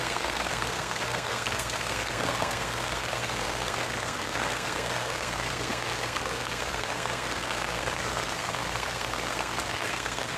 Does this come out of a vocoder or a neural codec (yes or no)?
yes